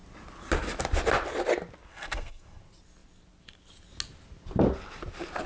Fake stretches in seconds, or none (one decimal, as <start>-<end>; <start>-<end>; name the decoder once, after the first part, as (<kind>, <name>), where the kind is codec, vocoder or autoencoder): 1.9-2.6 (codec, SNAC)